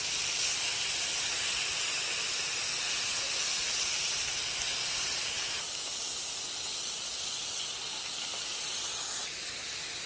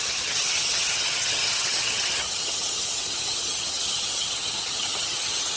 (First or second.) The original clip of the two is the first